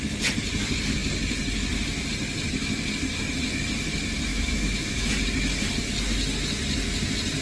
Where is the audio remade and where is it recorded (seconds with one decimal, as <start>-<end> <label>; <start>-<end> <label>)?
0.0-4.3 recorded; 4.3-5.1 remade; 5.1-7.4 recorded